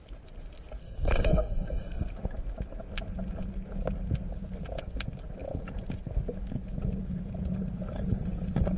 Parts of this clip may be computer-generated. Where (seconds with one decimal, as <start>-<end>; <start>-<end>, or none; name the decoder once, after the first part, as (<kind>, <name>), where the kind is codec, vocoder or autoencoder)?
0.8-2.1 (codec, SNAC)